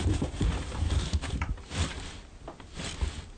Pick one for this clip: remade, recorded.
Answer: recorded